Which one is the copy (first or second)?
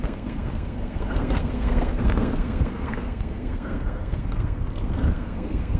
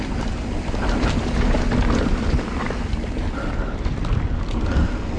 first